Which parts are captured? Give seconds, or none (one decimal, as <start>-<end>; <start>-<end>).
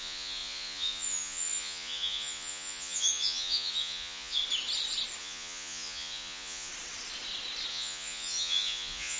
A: 4.4-5.2; 6.7-7.7